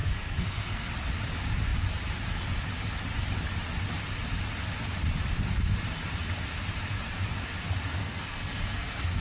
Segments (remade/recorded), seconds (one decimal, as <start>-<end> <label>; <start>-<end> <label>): 0.0-0.9 remade; 0.9-8.0 recorded; 8.0-9.2 remade